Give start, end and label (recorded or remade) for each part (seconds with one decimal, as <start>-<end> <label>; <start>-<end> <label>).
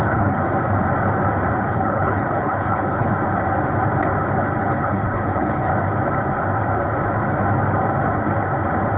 0.0-0.4 remade; 0.4-1.6 recorded; 1.6-3.1 remade; 3.1-4.6 recorded; 4.6-5.7 remade; 5.7-9.0 recorded